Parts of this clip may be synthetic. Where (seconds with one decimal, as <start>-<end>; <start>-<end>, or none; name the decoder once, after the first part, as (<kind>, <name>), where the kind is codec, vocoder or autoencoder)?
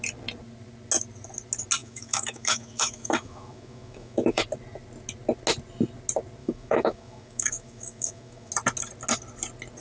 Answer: 1.8-4.4 (autoencoder, DAC-VAE); 6.4-8.5